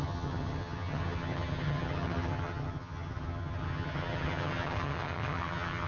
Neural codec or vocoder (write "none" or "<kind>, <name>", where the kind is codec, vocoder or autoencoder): vocoder, HiFi-GAN